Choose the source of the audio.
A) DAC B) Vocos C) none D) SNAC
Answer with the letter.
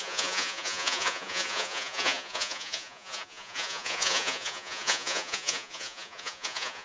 B